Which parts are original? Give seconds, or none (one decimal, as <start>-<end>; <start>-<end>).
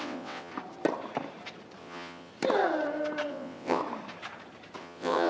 0.5-1.8; 2.3-3.3; 3.8-4.8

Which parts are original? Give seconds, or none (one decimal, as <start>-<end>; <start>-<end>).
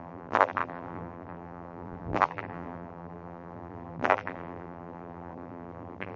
none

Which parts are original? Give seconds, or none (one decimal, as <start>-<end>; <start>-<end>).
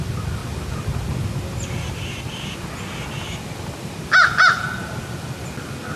0.0-6.0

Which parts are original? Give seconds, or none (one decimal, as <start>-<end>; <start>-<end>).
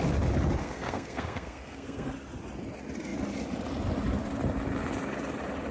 0.0-0.6; 2.1-5.7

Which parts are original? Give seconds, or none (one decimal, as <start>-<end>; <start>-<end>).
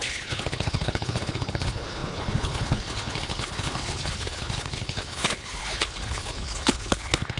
none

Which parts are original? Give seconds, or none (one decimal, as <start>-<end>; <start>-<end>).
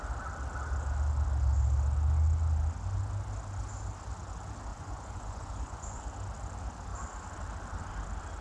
0.0-4.7; 6.0-8.4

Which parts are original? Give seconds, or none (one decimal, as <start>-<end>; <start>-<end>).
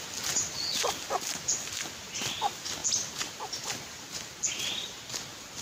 0.0-5.6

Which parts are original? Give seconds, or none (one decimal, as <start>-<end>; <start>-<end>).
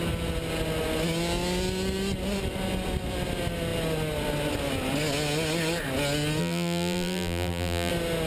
0.0-6.4; 7.9-8.3